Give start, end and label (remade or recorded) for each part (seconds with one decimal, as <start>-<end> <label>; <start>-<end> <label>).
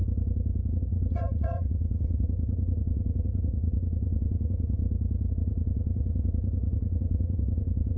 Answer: 0.0-0.7 recorded; 0.7-4.8 remade; 4.8-5.3 recorded; 5.3-8.0 remade